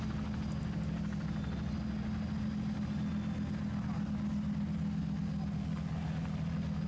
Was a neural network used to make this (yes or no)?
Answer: no